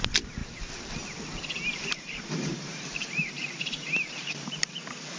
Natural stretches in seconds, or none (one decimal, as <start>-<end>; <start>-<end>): 0.0-1.7; 4.8-5.2